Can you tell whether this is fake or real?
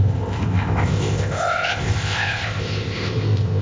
fake